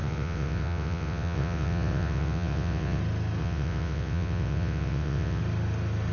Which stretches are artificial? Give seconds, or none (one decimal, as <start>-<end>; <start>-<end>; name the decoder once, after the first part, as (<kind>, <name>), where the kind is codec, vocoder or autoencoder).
0.0-3.0 (vocoder, WaveNeXt); 3.4-5.4